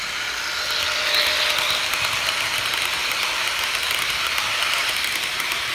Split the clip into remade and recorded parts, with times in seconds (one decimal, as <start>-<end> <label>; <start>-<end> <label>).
0.0-3.0 recorded; 3.0-5.7 remade

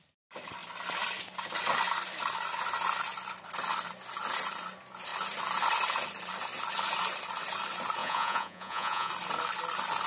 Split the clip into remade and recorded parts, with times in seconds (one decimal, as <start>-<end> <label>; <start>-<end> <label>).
0.0-8.0 recorded; 8.0-9.1 remade; 9.1-10.1 recorded

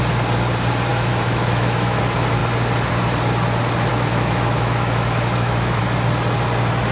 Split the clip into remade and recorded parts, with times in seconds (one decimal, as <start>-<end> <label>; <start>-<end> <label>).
0.0-0.9 recorded; 0.9-2.0 remade; 2.0-3.9 recorded; 3.9-5.8 remade; 5.8-6.9 recorded

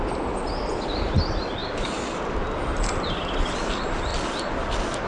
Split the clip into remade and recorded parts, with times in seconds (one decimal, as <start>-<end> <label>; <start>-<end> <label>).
0.0-1.6 recorded; 1.6-3.2 remade; 3.2-4.1 recorded; 4.1-5.1 remade

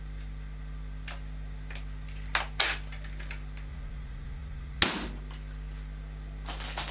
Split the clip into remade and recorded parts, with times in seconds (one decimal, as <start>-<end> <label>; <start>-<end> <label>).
0.0-3.7 recorded; 3.7-4.8 remade; 4.8-6.9 recorded